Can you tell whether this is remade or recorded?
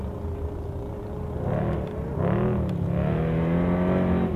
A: recorded